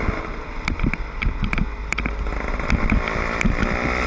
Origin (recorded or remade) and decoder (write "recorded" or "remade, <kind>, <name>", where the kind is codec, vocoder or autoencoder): recorded